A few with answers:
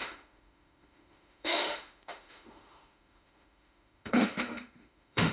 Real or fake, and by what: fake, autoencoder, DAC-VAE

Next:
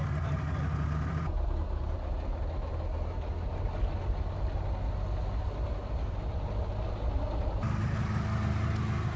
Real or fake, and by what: real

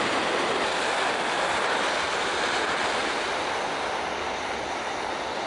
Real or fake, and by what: real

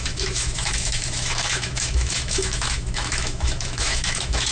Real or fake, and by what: fake, autoencoder, DAC-VAE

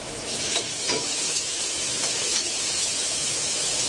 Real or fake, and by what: fake, autoencoder, DAC-VAE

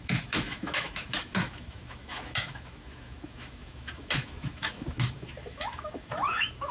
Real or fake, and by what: fake, autoencoder, DAC-VAE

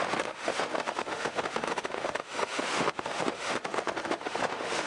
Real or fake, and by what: fake, autoencoder, DAC-VAE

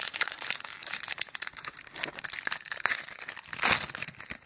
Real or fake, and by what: real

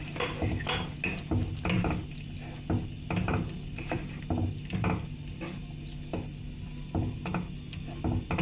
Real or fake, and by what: real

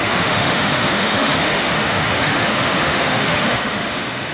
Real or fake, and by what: fake, autoencoder, DAC-VAE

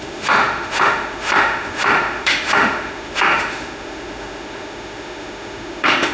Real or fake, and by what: fake, autoencoder, DAC-VAE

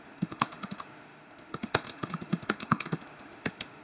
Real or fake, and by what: fake, autoencoder, DAC-VAE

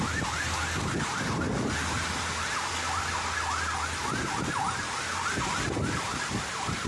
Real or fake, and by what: real